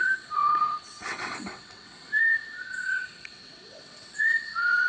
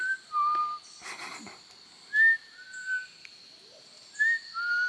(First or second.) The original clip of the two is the second